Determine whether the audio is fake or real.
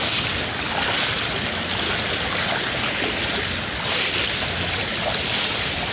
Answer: real